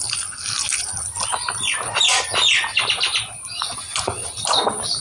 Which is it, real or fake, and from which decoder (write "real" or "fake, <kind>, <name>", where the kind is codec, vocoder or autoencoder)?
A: real